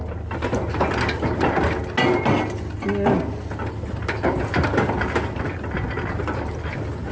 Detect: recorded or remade recorded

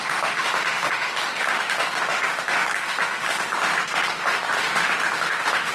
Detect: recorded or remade remade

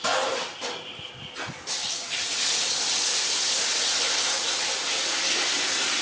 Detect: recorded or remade recorded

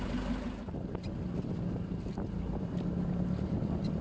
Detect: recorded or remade recorded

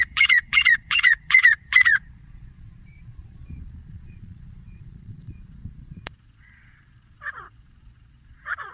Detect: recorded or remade remade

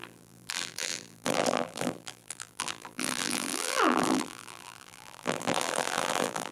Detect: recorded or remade remade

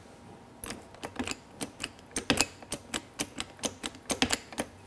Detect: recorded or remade recorded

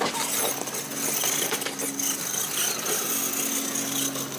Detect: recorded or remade recorded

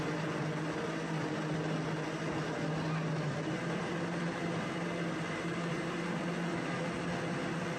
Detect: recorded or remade recorded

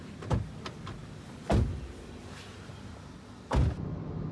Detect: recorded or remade recorded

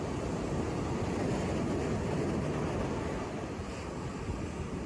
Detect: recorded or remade recorded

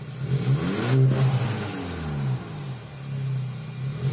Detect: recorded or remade recorded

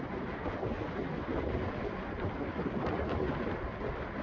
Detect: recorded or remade recorded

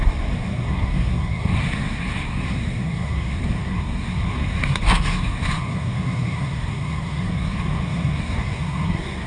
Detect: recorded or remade remade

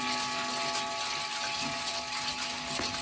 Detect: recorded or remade recorded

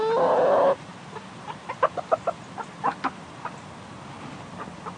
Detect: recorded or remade recorded